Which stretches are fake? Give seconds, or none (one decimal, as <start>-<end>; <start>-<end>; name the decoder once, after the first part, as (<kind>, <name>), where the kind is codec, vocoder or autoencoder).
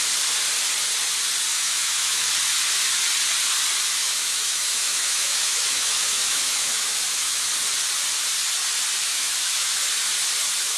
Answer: 1.5-2.3 (autoencoder, DAC-VAE); 4.0-7.4; 9.1-9.8